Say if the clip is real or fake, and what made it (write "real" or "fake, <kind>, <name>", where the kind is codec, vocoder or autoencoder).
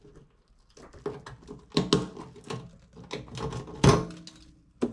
real